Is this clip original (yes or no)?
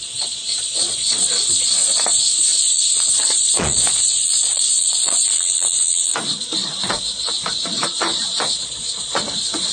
no